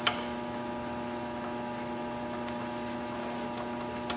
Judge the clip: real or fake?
real